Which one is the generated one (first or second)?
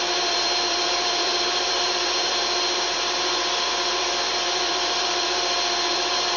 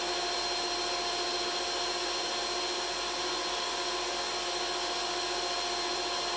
first